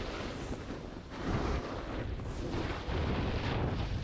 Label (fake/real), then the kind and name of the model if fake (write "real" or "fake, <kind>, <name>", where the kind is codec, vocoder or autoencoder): real